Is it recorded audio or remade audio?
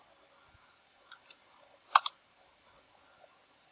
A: recorded